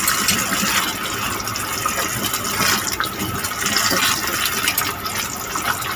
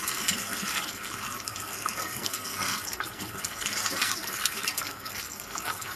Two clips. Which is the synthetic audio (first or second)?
second